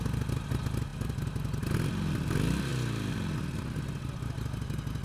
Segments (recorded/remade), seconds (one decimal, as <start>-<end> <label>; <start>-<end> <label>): 0.0-5.0 recorded